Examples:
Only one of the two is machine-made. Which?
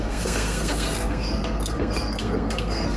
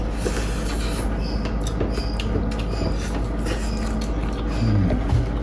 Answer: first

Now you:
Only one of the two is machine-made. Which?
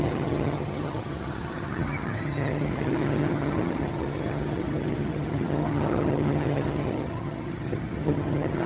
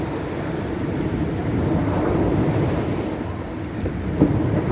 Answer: first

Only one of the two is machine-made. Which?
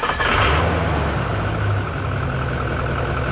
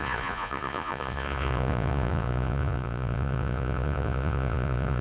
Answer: second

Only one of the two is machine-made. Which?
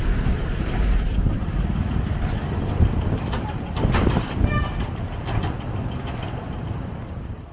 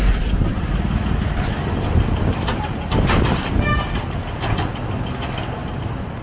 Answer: first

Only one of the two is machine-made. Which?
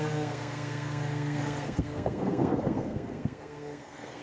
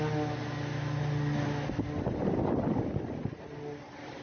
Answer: first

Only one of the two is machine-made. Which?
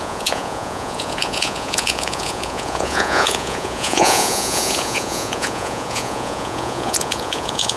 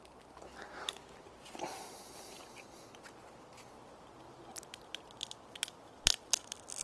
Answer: first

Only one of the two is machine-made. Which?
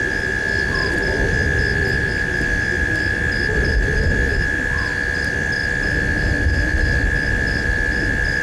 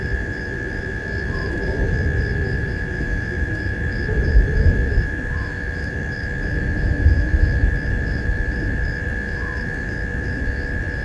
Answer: second